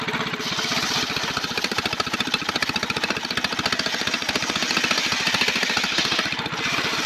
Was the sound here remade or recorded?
recorded